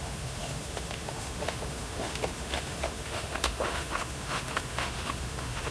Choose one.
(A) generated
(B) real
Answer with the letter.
A